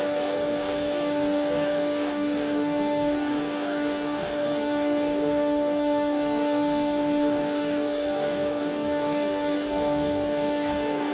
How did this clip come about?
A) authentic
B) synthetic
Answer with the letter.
B